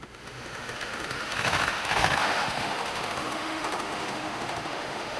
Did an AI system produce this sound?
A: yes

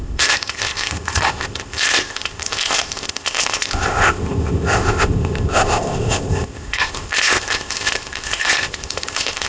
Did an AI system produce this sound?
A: yes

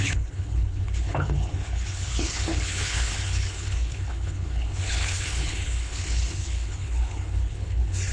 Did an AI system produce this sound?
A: yes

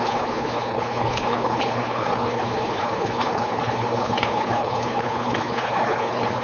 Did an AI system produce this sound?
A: yes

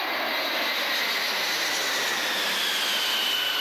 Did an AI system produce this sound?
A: no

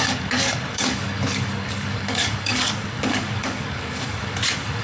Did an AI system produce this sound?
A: yes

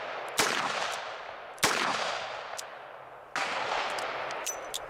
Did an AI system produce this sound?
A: no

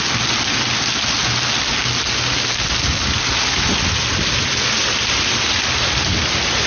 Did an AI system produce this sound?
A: no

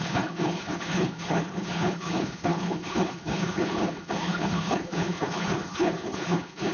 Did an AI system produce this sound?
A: yes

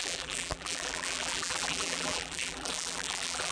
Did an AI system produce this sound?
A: yes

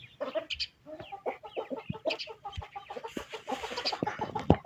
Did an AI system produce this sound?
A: no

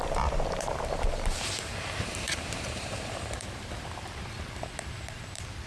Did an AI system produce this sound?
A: yes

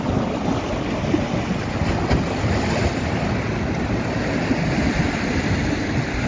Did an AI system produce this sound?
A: no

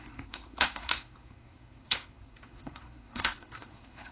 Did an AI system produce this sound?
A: yes